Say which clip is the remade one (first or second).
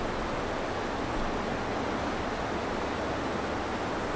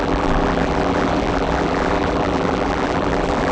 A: second